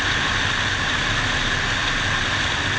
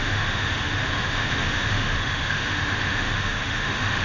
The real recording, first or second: first